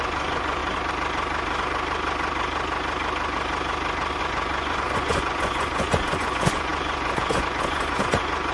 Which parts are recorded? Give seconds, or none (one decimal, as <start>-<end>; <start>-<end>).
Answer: 0.6-4.2

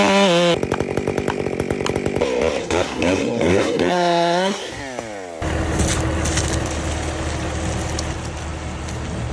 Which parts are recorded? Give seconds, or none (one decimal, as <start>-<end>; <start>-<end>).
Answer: 0.0-2.6; 4.8-9.3

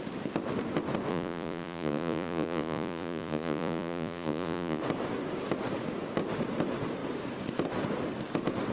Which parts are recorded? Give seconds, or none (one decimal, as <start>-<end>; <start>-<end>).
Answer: 0.0-1.1; 4.8-8.7

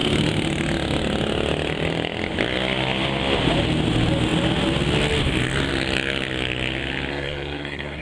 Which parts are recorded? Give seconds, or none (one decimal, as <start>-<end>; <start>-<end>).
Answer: 0.0-7.1

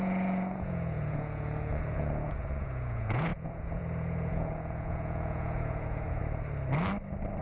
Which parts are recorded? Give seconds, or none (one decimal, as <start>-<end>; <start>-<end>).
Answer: 6.2-7.4